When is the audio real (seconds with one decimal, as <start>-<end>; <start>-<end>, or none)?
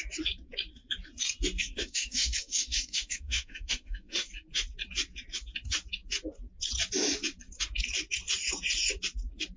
0.0-1.6; 4.3-9.6